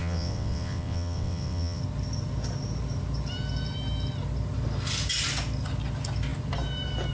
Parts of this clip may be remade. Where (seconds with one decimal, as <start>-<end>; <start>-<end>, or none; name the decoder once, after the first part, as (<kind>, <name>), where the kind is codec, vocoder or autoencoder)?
0.0-1.8 (vocoder, WaveNeXt)